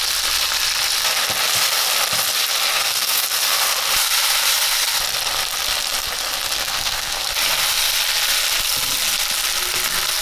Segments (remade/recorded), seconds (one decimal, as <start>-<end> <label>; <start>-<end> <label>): 0.0-2.7 recorded; 2.7-3.2 remade; 3.2-6.6 recorded; 6.6-7.2 remade; 7.2-10.2 recorded